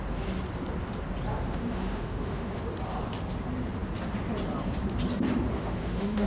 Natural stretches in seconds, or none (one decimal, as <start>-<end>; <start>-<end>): 0.0-1.3; 2.6-5.5